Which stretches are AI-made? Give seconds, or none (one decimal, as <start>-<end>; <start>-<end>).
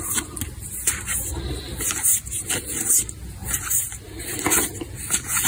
1.1-1.6; 2.1-3.0